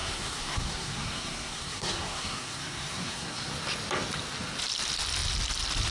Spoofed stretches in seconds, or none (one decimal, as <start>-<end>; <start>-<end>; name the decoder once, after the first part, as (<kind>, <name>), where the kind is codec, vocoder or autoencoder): 0.0-3.5 (codec, SNAC)